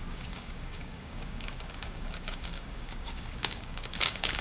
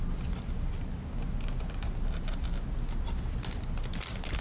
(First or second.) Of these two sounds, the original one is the second